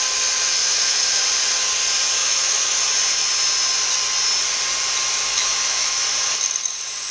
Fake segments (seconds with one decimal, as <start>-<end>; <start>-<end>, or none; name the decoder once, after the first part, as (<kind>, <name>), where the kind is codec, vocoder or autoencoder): 0.6-1.2 (autoencoder, DAC-VAE); 2.2-2.8; 5.3-6.0